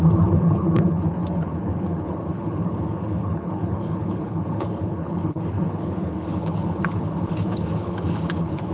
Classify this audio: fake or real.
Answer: fake